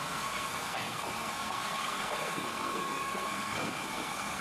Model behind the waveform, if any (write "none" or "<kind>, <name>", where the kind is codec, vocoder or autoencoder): codec, SNAC